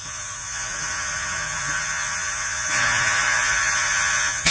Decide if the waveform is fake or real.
fake